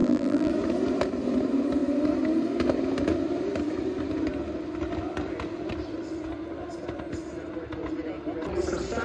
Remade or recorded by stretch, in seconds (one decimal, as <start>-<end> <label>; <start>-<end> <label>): 0.0-0.5 remade; 0.5-9.0 recorded